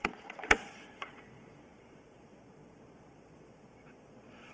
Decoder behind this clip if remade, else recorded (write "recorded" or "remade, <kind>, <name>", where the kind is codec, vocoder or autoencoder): remade, vocoder, Vocos